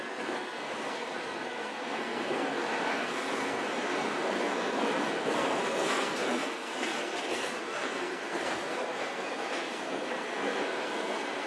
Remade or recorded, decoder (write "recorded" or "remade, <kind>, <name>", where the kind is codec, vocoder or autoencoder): remade, codec, SNAC